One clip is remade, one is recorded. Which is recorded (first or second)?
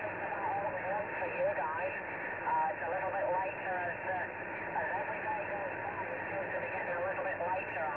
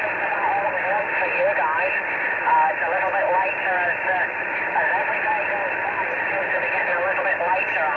first